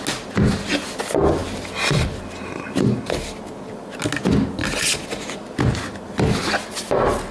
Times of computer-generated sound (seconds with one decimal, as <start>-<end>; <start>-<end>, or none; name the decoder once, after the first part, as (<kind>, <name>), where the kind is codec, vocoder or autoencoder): none